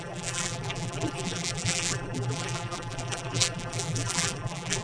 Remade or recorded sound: remade